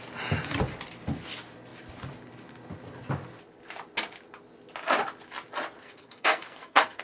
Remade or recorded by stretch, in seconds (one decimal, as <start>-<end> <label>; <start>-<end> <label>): 0.0-5.8 recorded; 5.8-7.0 remade